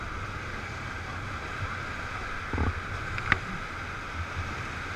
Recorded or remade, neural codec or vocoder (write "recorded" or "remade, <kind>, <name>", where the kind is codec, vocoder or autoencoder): recorded